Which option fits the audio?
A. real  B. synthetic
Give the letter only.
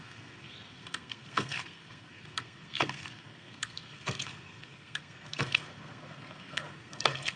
B